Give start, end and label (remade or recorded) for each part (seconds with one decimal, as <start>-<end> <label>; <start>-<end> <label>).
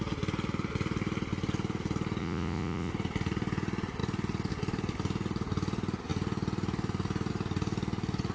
0.0-2.2 recorded; 2.2-2.9 remade; 2.9-8.3 recorded